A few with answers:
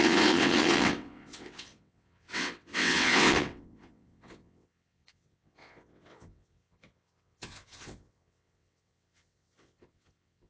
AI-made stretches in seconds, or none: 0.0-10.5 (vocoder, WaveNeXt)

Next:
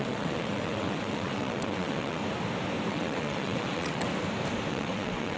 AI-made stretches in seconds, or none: 0.0-2.2 (vocoder, WaveNeXt); 2.9-4.1; 4.7-5.4

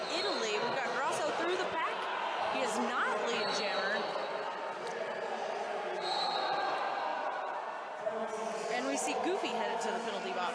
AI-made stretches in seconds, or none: none

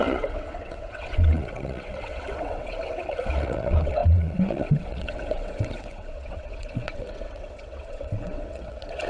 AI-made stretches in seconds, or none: 0.0-9.1 (vocoder, WaveNeXt)

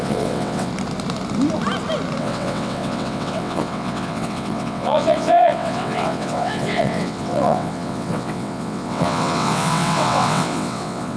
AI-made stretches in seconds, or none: 0.0-0.7 (vocoder, WaveNeXt); 2.2-11.2

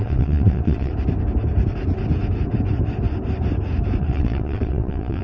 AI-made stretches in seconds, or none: 0.0-0.9 (vocoder, WaveNeXt); 4.0-5.2